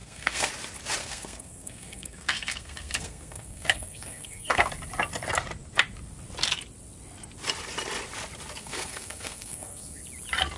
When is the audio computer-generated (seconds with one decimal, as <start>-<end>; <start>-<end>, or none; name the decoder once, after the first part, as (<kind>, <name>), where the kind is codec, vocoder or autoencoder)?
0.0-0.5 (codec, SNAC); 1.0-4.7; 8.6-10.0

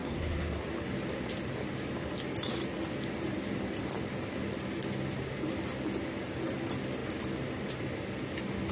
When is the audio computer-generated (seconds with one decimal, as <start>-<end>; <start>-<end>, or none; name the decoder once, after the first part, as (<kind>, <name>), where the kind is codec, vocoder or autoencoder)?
0.0-0.6 (codec, SNAC)

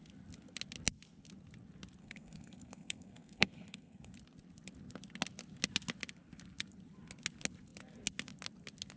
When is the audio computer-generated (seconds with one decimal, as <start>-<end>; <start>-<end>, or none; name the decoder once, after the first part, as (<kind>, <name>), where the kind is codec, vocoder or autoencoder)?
2.0-4.1 (codec, SNAC)

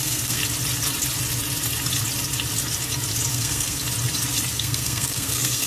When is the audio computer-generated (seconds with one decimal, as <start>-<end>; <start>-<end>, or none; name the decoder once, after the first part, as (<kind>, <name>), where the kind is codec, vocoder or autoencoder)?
0.0-0.4 (codec, SNAC); 3.3-3.8; 4.5-5.7